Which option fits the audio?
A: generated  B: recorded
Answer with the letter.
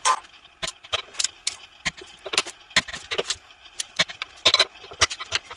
B